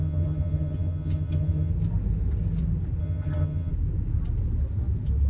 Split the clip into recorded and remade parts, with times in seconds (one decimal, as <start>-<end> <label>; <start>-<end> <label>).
0.0-1.7 remade; 1.7-3.0 recorded; 3.0-3.7 remade; 3.7-5.3 recorded